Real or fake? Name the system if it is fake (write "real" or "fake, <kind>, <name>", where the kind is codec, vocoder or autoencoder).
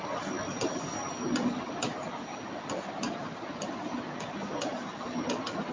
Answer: real